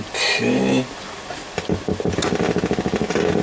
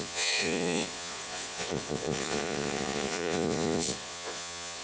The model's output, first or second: second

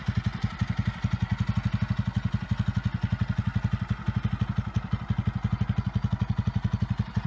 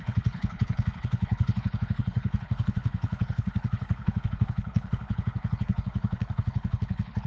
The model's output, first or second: second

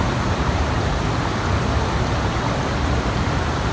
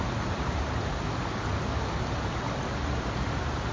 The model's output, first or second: first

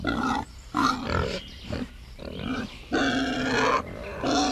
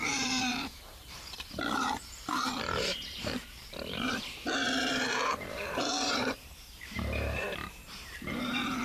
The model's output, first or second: second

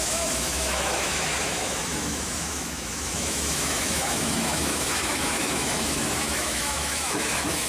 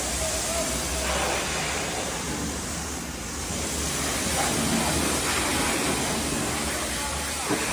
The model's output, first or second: first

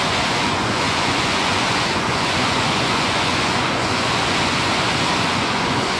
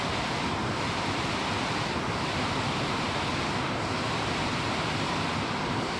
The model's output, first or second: first